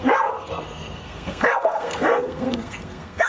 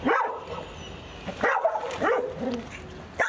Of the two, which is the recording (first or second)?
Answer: second